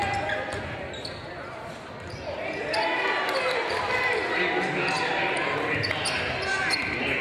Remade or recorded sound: recorded